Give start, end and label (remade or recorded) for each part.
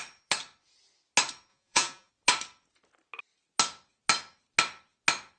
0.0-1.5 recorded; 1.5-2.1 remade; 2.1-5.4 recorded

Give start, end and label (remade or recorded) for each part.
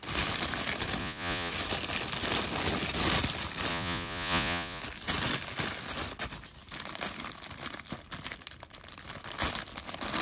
0.0-1.0 recorded; 1.0-1.5 remade; 1.5-3.7 recorded; 3.7-4.8 remade; 4.8-10.2 recorded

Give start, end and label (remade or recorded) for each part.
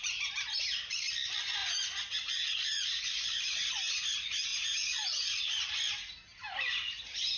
0.0-1.6 recorded; 1.6-3.2 remade; 3.2-4.5 recorded; 4.5-5.7 remade; 5.7-7.4 recorded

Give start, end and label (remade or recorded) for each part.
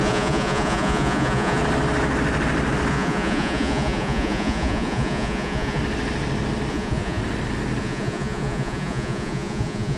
0.0-1.6 remade; 1.6-2.9 recorded; 2.9-5.8 remade; 5.8-6.7 recorded; 6.7-7.2 remade; 7.2-7.8 recorded; 7.8-10.0 remade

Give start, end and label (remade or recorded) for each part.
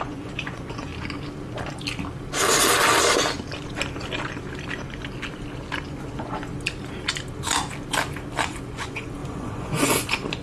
0.0-0.9 remade; 0.9-5.9 recorded; 5.9-6.5 remade; 6.5-8.5 recorded; 8.5-10.4 remade